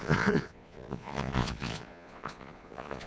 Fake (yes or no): yes